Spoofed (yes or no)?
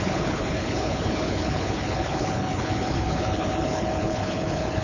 yes